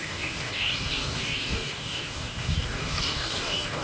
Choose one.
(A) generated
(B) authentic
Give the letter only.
A